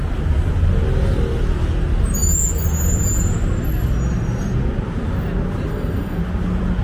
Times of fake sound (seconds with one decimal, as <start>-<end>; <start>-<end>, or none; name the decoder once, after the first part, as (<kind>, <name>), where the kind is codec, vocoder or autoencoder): 5.7-6.2 (codec, SNAC)